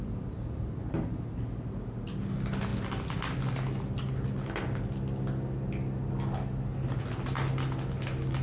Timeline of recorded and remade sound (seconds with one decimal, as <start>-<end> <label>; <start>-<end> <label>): 0.0-8.4 recorded